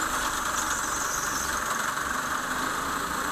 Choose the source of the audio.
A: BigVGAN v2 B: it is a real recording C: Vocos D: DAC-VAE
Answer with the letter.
B